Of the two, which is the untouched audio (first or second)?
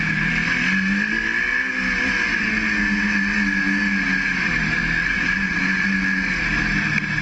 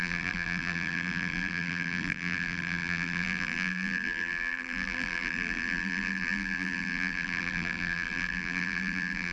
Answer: first